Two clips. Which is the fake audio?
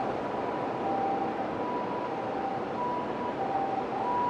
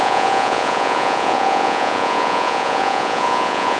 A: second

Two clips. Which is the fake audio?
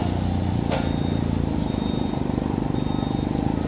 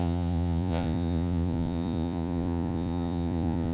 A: second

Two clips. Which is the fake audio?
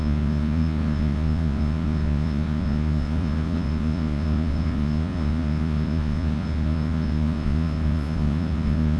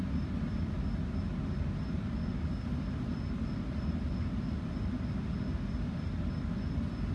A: first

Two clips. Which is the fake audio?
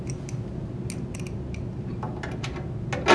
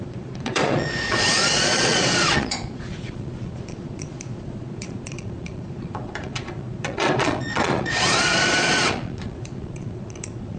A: second